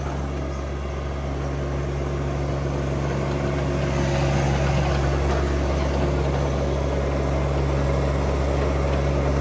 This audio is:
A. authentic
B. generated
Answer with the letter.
A